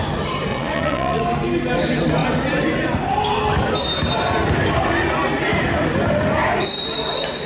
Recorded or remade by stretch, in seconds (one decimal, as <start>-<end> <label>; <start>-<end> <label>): 0.0-0.5 recorded; 0.5-1.2 remade; 1.2-7.5 recorded